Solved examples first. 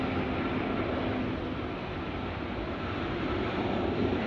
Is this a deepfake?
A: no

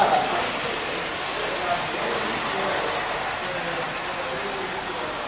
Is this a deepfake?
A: no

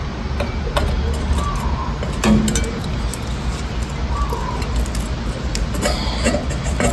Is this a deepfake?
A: no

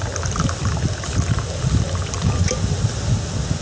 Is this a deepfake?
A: no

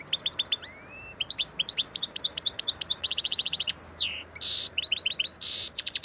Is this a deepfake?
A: yes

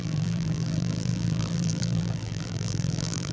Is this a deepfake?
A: yes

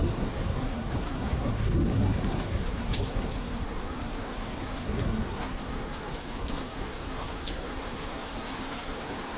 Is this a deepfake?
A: yes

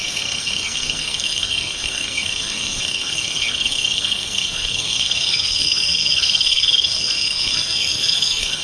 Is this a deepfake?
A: yes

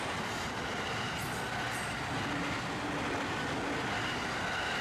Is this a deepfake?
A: no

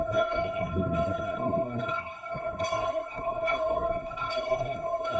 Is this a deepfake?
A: yes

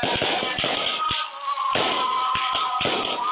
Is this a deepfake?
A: no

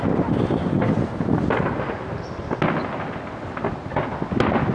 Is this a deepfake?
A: no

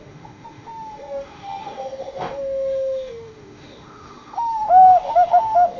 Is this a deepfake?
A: yes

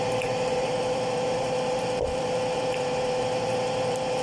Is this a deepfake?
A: yes